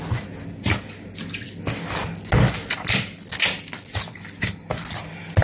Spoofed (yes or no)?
no